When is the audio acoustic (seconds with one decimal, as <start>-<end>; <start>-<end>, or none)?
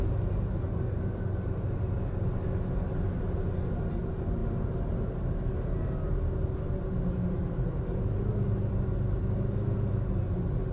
0.0-10.7